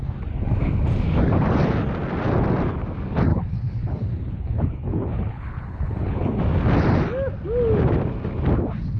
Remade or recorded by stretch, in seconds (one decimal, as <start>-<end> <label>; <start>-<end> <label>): 0.0-3.3 recorded; 3.3-6.4 remade; 6.4-9.0 recorded